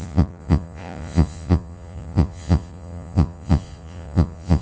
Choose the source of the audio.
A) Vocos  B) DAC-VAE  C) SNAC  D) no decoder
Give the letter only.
A